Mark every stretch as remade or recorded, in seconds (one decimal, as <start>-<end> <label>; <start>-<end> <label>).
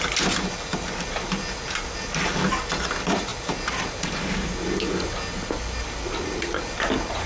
0.0-7.3 recorded